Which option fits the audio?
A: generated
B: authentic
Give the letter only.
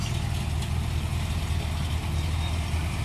B